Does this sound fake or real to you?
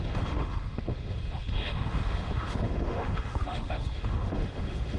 fake